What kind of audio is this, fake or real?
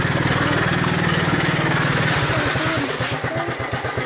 real